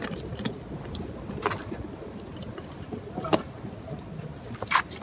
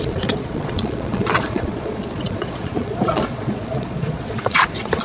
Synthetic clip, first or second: second